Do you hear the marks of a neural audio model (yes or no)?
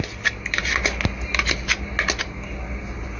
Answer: no